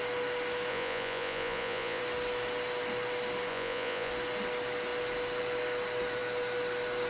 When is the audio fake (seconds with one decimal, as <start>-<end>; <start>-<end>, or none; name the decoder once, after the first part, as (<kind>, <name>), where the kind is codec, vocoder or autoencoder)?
0.7-2.0 (vocoder, Vocos); 3.5-4.1